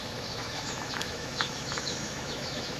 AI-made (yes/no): yes